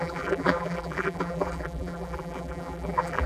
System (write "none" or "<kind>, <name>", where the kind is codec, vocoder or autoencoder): vocoder, BigVGAN v2